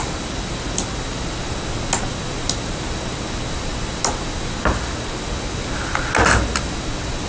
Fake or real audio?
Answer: real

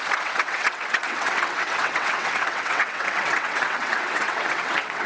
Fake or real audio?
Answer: fake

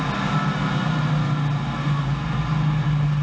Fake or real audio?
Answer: real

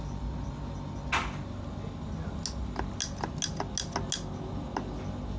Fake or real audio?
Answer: real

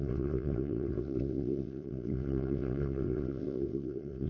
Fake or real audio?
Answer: fake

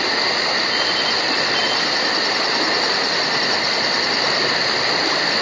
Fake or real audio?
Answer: real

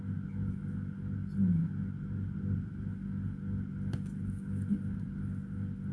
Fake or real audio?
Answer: real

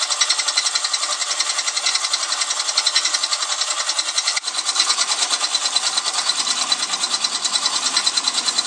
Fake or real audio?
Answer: real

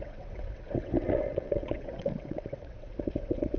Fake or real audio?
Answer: fake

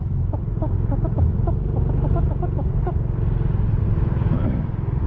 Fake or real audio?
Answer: real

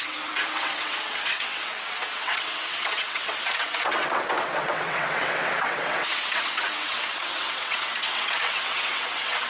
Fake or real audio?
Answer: fake